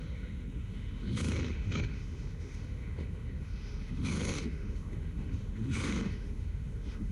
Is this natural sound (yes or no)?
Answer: no